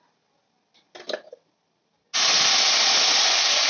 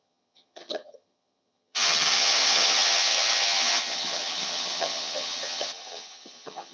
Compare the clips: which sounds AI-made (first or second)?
second